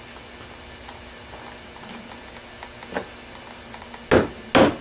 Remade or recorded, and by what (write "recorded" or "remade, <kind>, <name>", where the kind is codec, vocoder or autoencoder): recorded